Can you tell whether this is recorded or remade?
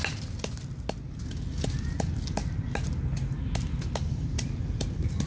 recorded